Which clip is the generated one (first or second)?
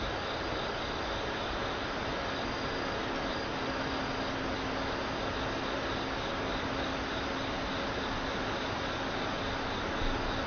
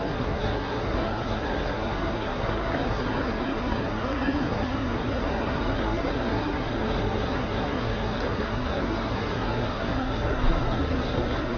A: second